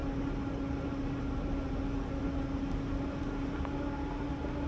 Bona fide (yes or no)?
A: yes